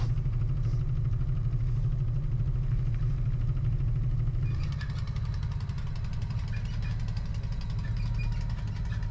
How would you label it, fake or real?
real